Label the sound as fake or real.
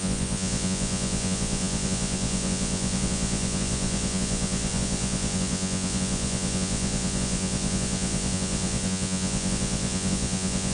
fake